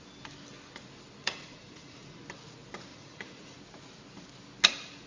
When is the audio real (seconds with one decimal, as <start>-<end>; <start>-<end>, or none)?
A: 0.0-1.2; 2.2-2.9; 3.6-5.1